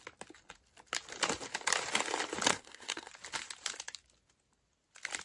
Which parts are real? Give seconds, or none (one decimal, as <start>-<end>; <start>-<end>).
0.0-2.5; 3.1-5.2